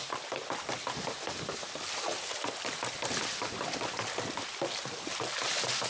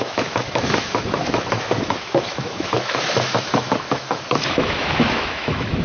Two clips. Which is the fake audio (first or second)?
second